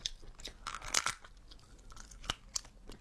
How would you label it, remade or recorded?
recorded